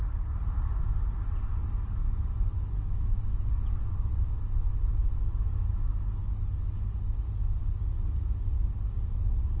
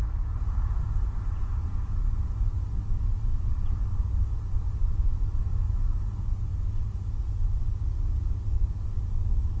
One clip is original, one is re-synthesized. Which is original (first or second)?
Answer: first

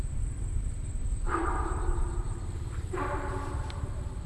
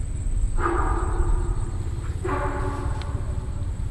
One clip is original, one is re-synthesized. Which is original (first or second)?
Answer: second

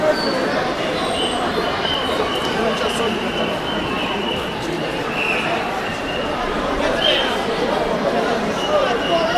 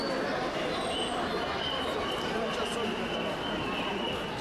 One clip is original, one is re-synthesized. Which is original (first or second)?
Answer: second